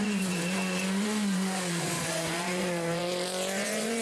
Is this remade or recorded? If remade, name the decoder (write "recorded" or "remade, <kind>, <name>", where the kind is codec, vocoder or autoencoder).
remade, vocoder, Vocos